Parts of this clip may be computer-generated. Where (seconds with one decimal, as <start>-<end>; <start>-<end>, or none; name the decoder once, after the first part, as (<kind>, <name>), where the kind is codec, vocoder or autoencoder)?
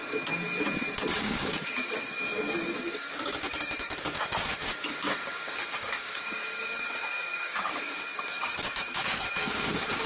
1.2-10.1 (codec, DAC)